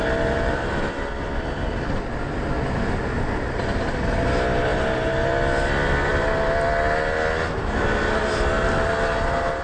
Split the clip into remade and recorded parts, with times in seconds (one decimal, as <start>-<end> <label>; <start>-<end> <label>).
0.0-9.6 recorded